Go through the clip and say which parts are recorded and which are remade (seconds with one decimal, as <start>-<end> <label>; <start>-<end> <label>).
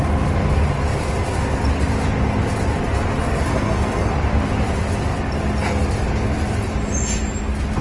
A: 0.0-3.5 recorded; 3.5-4.1 remade; 4.1-7.8 recorded